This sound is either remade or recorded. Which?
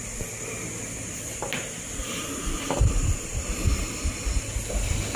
recorded